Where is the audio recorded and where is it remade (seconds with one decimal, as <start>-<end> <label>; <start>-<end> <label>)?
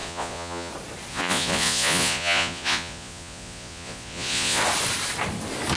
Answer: 0.0-0.7 remade; 0.7-1.1 recorded; 1.1-4.6 remade; 4.6-5.8 recorded